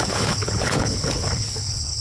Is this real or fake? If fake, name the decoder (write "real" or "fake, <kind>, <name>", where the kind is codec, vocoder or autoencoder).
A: fake, codec, HILCodec